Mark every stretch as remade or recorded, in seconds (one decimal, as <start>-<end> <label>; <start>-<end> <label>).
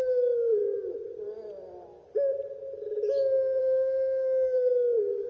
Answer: 0.0-0.6 remade; 0.6-3.6 recorded; 3.6-5.3 remade